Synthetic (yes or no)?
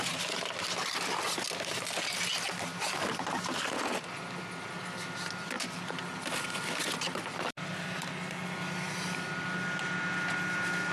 no